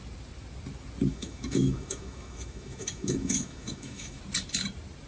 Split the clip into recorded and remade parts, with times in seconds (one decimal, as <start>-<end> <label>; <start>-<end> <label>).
0.0-1.1 recorded; 1.1-4.2 remade; 4.2-5.1 recorded